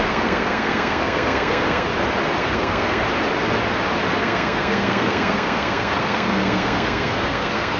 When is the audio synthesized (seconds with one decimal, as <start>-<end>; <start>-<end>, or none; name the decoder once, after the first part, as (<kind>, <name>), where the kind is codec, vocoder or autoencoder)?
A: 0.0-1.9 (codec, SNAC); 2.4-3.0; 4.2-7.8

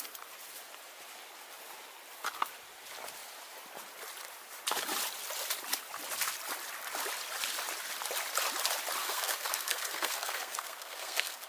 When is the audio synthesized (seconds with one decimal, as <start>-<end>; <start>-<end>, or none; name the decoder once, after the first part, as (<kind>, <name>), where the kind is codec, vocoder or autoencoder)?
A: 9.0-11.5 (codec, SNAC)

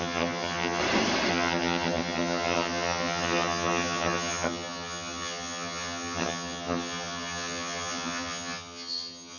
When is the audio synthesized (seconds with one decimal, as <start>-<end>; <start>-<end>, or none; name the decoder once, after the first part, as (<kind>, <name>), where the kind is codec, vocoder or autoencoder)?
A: 0.0-0.8 (vocoder, HiFi-GAN); 1.3-9.4

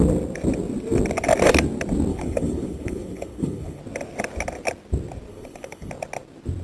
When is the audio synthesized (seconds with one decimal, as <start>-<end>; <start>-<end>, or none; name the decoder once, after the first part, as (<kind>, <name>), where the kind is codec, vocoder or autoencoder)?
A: 2.1-3.8 (codec, HILCodec); 5.3-5.9

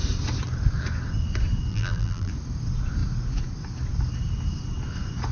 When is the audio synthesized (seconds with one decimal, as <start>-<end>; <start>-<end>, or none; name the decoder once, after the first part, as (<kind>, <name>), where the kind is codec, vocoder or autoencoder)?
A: 1.7-2.3 (vocoder, BigVGAN v2)

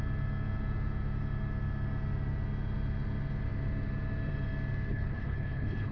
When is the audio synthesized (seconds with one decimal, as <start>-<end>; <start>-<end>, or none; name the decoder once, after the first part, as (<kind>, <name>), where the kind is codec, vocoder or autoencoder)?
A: 4.9-5.9 (codec, HILCodec)

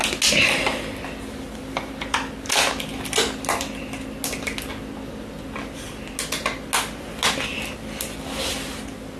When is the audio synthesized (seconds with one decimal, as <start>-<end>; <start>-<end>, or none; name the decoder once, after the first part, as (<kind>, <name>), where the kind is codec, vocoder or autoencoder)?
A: none